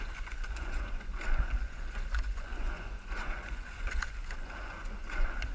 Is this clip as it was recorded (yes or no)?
no